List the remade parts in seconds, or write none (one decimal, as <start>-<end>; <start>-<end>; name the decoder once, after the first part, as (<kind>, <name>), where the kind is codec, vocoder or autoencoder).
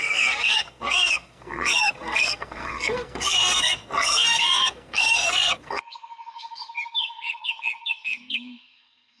0.0-9.2 (codec, SNAC)